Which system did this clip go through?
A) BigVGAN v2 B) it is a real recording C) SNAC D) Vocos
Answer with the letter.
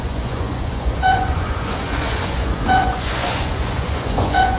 D